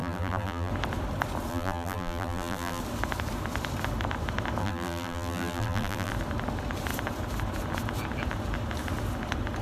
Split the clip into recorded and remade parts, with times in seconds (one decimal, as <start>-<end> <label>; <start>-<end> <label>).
0.0-0.7 remade; 0.7-1.5 recorded; 1.5-2.8 remade; 2.8-4.6 recorded; 4.6-6.1 remade; 6.1-9.6 recorded